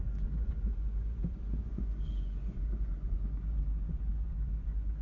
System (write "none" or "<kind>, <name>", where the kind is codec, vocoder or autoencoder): vocoder, Vocos